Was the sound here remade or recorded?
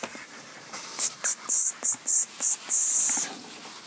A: recorded